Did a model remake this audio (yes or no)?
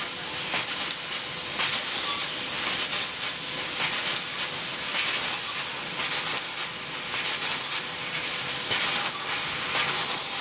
no